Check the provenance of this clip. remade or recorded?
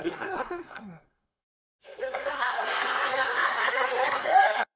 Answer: remade